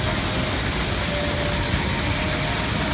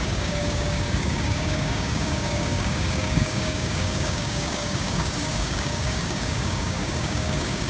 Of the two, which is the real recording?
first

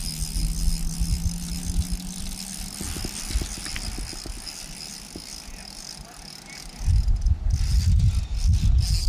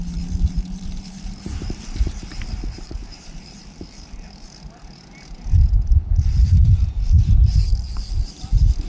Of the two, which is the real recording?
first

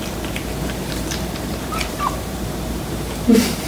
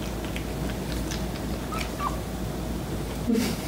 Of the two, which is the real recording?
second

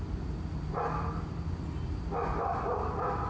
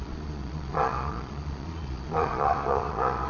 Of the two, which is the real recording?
first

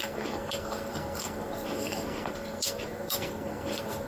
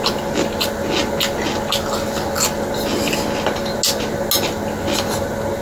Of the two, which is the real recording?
second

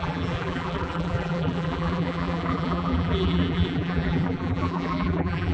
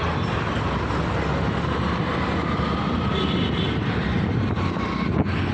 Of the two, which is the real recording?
second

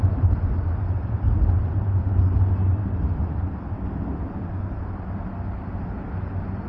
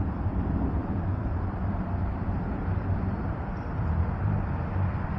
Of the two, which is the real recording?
first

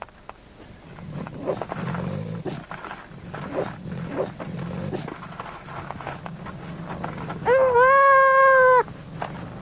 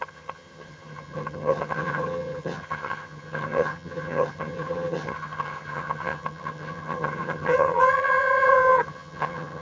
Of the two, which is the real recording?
first